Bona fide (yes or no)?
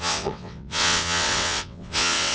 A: no